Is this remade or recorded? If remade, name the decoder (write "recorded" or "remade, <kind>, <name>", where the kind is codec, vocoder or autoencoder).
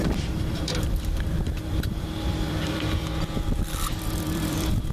remade, vocoder, BigVGAN v2